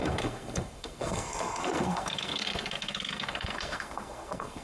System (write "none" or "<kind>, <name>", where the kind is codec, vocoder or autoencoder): codec, SNAC